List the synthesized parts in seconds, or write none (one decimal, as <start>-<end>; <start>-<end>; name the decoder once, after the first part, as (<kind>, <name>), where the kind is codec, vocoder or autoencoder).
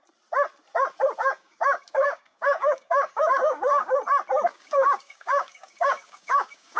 1.2-4.0 (codec, DAC); 4.5-6.8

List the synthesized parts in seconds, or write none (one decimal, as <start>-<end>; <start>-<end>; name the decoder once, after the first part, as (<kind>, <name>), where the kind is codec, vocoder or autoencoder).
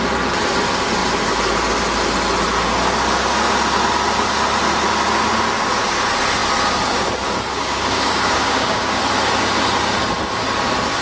7.5-9.0 (codec, DAC)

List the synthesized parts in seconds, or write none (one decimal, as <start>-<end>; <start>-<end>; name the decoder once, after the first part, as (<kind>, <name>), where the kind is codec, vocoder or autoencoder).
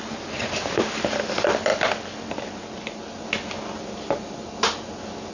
none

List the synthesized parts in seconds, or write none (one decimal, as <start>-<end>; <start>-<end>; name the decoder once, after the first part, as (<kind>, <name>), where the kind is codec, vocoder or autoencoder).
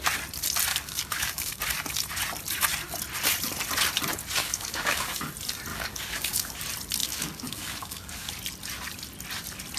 0.7-1.6 (codec, DAC); 4.4-5.3; 5.7-6.5; 7.0-8.3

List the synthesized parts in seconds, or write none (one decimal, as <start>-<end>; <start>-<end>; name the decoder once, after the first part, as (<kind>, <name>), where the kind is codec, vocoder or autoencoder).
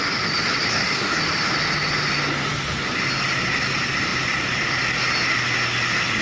0.7-1.2 (codec, DAC)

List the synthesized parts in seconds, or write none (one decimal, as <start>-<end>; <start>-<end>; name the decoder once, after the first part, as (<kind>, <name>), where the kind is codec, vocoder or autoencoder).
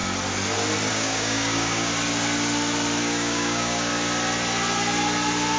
0.9-1.9 (codec, DAC); 3.0-3.9